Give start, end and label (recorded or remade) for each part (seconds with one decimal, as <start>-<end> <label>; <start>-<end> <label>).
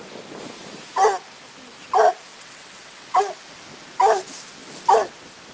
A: 0.0-2.3 recorded; 2.3-3.2 remade; 3.2-5.5 recorded